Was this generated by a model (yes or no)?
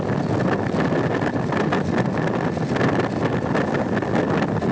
no